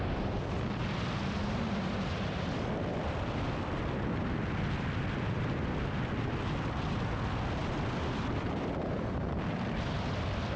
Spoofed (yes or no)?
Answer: yes